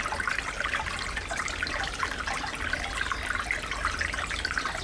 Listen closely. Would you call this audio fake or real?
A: real